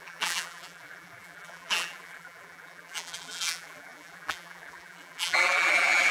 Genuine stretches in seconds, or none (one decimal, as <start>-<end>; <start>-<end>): none